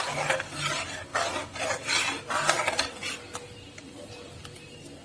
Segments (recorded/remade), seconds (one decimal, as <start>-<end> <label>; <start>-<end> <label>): 0.0-5.0 recorded